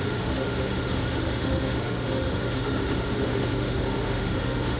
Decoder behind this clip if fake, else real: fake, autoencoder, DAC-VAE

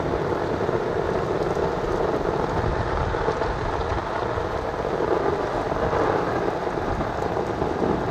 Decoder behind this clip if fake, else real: real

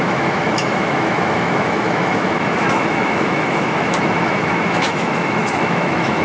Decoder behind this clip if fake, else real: fake, autoencoder, DAC-VAE